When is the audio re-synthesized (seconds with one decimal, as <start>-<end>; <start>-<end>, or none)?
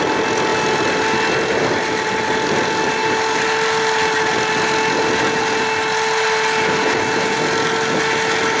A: none